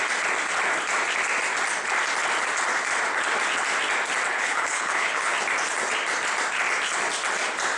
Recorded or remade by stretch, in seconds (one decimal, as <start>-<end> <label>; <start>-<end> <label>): 0.0-4.3 recorded; 4.3-5.3 remade; 5.3-7.8 recorded